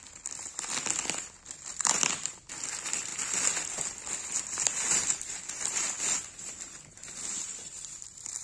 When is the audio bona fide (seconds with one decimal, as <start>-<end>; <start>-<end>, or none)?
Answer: 3.1-4.2